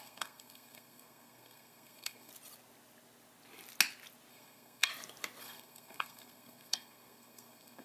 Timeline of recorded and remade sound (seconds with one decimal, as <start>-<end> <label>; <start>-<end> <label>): 0.0-2.3 remade; 2.3-4.3 recorded; 4.3-4.9 remade; 4.9-5.4 recorded; 5.4-7.8 remade